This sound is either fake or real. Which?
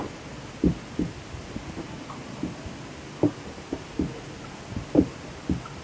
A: real